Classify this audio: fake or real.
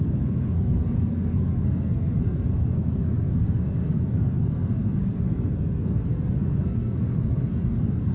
fake